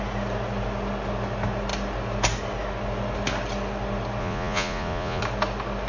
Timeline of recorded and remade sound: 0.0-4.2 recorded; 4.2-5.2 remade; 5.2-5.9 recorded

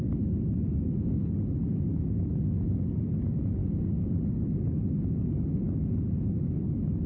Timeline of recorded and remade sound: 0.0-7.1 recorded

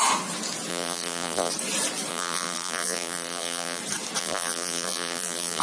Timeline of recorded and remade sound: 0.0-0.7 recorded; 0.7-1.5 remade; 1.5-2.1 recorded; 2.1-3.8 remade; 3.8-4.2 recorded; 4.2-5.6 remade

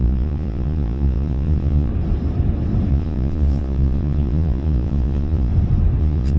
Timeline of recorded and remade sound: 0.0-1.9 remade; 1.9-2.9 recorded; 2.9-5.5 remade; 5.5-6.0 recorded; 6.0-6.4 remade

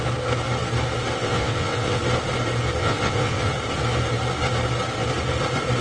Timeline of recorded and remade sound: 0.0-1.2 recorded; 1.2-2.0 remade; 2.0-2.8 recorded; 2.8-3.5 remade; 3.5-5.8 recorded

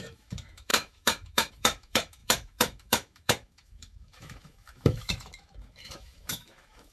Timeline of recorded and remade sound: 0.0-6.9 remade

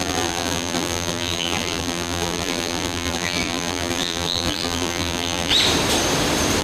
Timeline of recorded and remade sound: 0.0-5.5 remade; 5.5-6.6 recorded